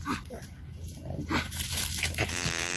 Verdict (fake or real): real